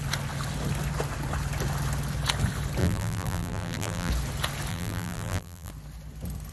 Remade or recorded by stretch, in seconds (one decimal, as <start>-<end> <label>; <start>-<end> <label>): 0.0-2.8 recorded; 2.8-4.1 remade; 4.1-4.7 recorded; 4.7-5.7 remade; 5.7-6.5 recorded